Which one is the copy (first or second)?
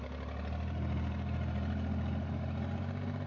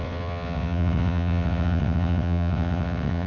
second